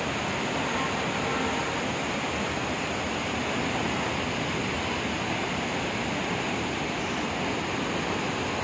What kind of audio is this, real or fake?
real